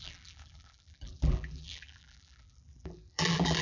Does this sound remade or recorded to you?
remade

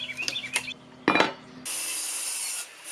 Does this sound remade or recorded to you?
recorded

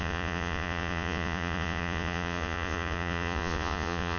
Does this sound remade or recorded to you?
remade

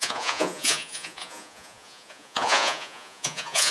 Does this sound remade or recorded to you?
remade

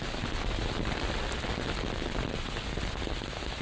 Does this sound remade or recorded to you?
recorded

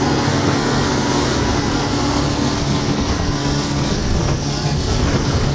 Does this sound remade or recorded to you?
remade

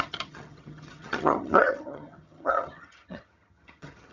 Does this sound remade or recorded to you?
remade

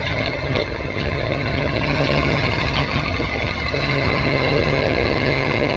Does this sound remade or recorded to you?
remade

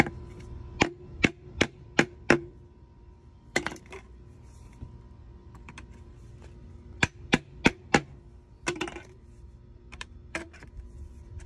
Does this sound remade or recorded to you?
remade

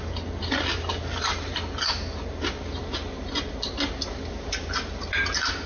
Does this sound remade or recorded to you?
recorded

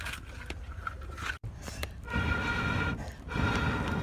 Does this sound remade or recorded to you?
remade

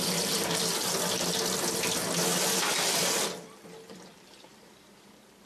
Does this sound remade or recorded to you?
remade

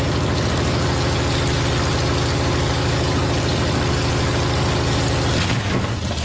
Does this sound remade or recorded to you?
recorded